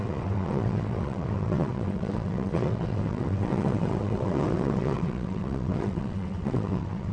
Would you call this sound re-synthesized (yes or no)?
yes